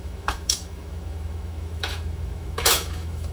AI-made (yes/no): yes